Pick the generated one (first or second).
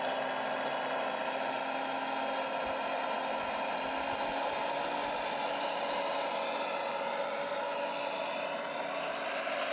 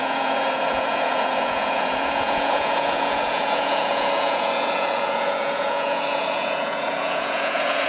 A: second